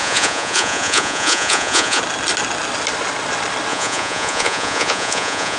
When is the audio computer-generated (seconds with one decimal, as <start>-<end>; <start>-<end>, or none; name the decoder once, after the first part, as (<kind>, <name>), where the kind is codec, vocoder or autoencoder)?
0.0-2.0 (vocoder, Vocos); 3.7-5.6